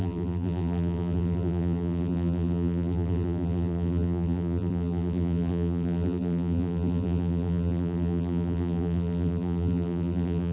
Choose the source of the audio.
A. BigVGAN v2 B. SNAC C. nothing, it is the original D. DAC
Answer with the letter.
A